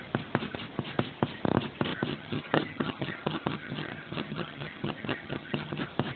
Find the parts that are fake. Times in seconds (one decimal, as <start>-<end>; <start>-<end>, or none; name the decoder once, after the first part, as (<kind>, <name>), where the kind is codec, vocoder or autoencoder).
2.1-5.8 (vocoder, HiFi-GAN)